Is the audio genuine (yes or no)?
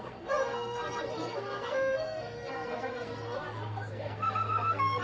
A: no